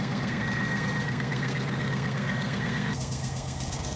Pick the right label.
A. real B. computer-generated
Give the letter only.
B